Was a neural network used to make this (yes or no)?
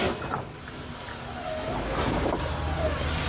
no